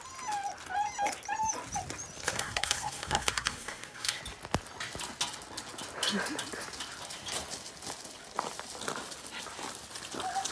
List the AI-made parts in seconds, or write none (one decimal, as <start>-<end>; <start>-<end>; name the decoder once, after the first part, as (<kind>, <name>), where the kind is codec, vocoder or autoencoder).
2.2-4.2 (codec, SNAC)